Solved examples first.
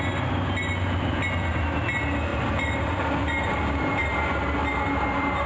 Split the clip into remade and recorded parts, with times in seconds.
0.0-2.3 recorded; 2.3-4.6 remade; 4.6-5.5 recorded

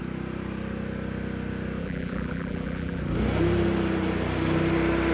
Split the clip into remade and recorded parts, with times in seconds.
0.0-1.8 recorded; 1.8-3.0 remade; 3.0-5.1 recorded

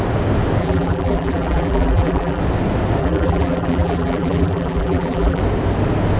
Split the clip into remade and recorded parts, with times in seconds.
0.0-0.6 recorded; 0.6-2.4 remade; 2.4-3.0 recorded; 3.0-5.4 remade; 5.4-6.2 recorded

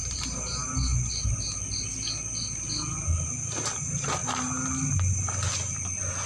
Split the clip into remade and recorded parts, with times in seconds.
0.0-0.5 remade; 0.5-6.3 recorded

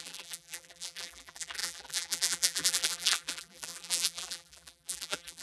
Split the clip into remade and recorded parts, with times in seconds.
0.0-5.4 remade

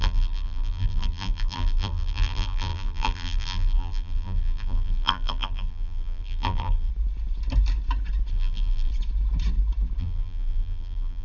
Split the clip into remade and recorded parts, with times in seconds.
0.0-6.9 remade; 6.9-8.3 recorded; 8.3-8.9 remade; 8.9-10.0 recorded; 10.0-11.2 remade